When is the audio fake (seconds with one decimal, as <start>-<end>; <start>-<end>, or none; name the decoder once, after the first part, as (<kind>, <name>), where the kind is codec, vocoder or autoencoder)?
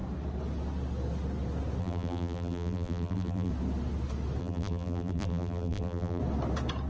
1.8-3.5 (vocoder, BigVGAN v2); 4.4-6.2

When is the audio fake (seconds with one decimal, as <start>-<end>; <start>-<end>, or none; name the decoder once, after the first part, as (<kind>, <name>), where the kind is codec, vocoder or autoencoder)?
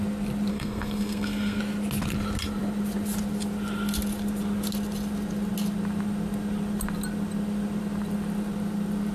0.5-1.6 (codec, SNAC)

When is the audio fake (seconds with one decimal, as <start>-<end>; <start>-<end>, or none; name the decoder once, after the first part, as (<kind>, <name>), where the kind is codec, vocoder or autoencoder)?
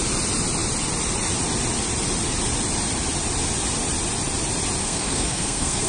4.8-5.9 (codec, SNAC)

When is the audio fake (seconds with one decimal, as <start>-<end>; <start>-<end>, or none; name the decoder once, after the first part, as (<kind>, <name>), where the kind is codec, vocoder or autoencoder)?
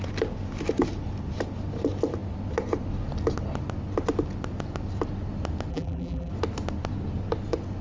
5.7-6.3 (vocoder, BigVGAN v2)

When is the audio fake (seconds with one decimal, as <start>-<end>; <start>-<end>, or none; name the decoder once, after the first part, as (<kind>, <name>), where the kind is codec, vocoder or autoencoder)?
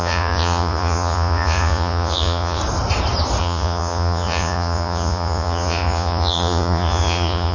0.0-2.6 (vocoder, Vocos); 3.4-7.5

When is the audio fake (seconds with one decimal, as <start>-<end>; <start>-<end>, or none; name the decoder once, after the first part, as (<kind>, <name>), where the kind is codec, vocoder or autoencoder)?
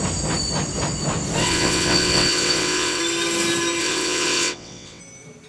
1.4-3.0 (vocoder, WaveNeXt); 3.8-5.0